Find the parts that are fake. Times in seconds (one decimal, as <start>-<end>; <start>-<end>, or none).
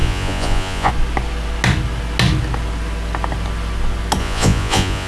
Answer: 0.0-0.9; 4.2-5.1